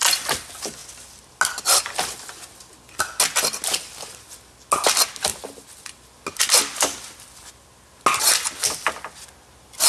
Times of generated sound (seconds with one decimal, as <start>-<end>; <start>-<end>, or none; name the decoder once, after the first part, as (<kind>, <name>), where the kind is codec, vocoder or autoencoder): none